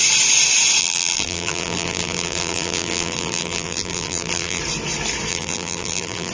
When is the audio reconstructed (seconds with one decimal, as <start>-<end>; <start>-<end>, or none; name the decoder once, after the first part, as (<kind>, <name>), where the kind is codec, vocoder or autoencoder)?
0.8-4.6 (vocoder, BigVGAN v2); 5.3-6.3